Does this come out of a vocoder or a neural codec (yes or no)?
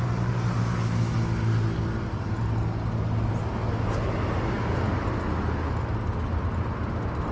no